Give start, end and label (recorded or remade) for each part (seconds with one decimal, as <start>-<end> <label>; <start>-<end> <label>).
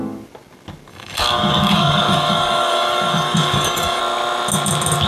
0.0-0.9 recorded; 0.9-4.0 remade; 4.0-5.1 recorded